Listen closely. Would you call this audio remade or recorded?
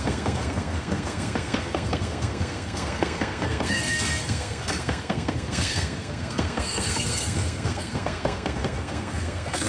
remade